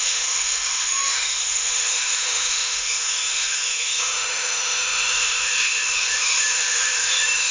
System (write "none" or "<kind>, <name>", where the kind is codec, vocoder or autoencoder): autoencoder, DAC-VAE